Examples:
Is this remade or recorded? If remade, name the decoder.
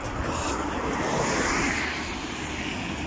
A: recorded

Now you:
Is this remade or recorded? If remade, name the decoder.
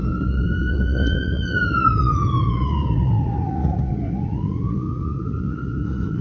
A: remade, vocoder, Vocos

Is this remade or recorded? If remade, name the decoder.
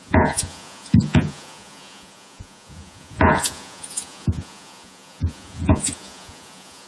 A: remade, vocoder, Vocos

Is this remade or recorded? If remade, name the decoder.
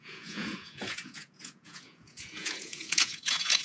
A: remade, vocoder, Vocos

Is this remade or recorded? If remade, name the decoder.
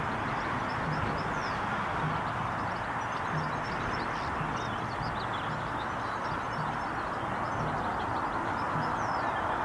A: recorded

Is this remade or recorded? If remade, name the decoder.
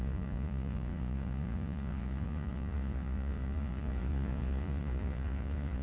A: remade, vocoder, Vocos